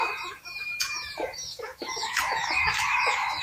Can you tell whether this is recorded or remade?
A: remade